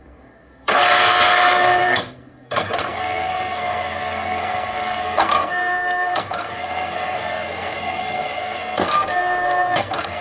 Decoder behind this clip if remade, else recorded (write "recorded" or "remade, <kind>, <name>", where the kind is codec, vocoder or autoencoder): remade, codec, SNAC